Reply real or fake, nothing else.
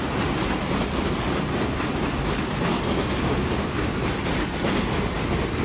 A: real